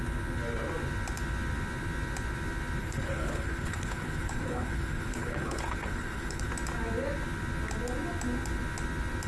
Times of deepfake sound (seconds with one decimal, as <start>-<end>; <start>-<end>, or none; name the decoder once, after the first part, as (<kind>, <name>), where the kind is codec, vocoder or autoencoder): 2.8-6.5 (codec, HILCodec)